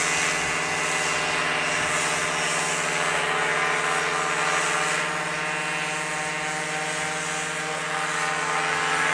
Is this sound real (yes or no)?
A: yes